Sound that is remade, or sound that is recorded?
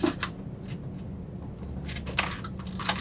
recorded